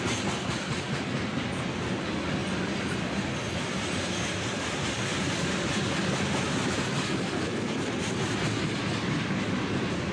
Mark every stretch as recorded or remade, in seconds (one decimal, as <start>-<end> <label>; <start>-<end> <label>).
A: 0.0-10.1 recorded

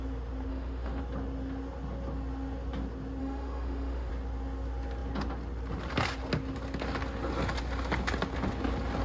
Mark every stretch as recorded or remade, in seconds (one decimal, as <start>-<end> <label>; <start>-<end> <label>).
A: 0.0-0.5 recorded; 0.5-1.0 remade; 1.0-3.2 recorded; 3.2-4.1 remade; 4.1-9.0 recorded

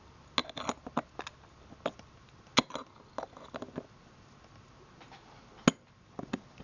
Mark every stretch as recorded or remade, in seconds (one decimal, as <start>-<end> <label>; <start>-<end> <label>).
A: 0.0-6.6 recorded

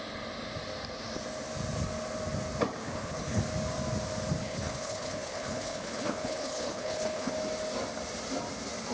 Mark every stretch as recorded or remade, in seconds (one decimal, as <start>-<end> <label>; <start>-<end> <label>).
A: 0.0-2.8 recorded; 2.8-3.4 remade; 3.4-4.4 recorded; 4.4-7.3 remade; 7.3-8.9 recorded